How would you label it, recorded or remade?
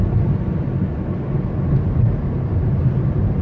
recorded